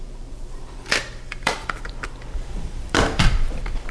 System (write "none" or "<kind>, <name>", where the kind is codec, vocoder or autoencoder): vocoder, BigVGAN v2